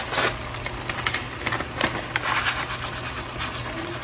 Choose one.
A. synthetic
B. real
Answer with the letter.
B